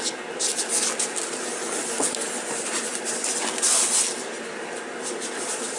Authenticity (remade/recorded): recorded